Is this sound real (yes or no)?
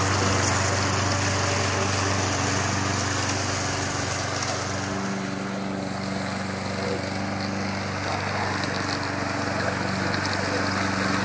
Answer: yes